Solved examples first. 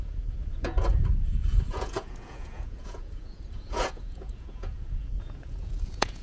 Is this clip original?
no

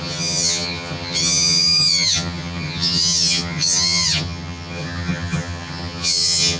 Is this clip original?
no